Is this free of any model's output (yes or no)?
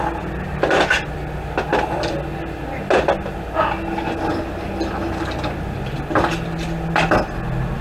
yes